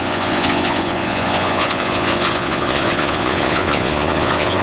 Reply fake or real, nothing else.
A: fake